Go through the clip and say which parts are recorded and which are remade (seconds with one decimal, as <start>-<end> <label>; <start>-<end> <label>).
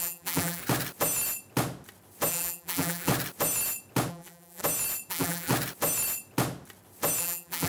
0.0-0.6 remade; 0.6-2.3 recorded; 2.3-3.1 remade; 3.1-4.1 recorded; 4.1-4.6 remade; 4.6-5.1 recorded; 5.1-5.5 remade; 5.5-7.2 recorded; 7.2-7.7 remade